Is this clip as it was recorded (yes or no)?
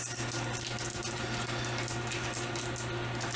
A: yes